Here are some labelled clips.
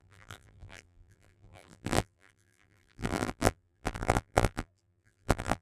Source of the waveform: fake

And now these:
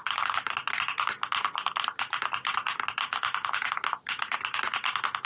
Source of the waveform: real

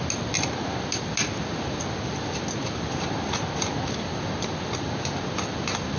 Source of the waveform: real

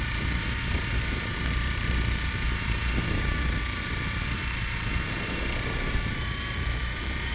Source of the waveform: fake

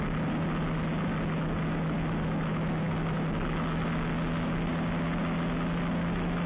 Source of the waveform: real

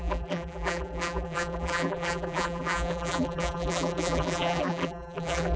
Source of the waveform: fake